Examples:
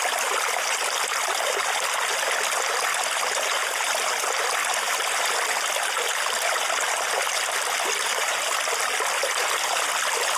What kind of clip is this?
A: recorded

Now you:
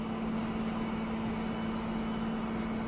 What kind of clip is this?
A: recorded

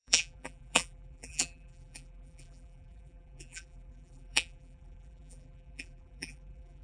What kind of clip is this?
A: remade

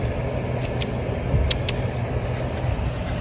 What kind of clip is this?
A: recorded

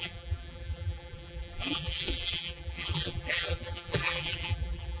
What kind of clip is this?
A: remade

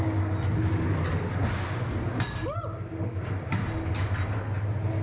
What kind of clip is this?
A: recorded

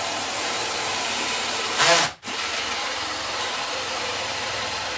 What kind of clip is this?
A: remade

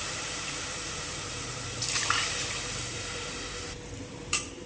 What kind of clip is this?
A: remade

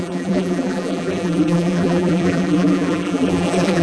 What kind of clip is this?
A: remade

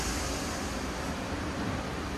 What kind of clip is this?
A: recorded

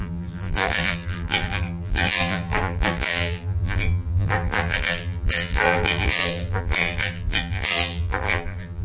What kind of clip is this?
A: remade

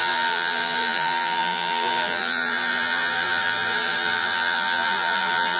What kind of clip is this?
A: remade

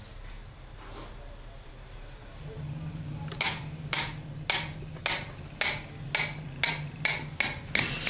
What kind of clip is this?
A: recorded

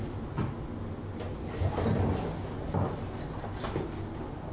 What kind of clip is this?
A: recorded